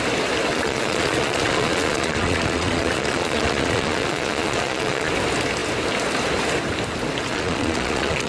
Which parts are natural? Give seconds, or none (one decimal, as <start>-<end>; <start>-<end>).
0.0-0.5; 5.1-7.3